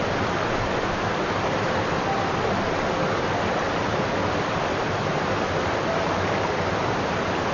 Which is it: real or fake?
real